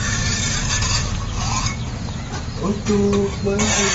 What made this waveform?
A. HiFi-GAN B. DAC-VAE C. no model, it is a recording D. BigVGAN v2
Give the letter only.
C